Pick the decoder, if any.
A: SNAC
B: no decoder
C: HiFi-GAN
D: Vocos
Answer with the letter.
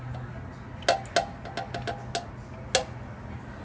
B